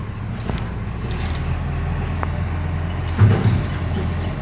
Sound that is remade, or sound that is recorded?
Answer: recorded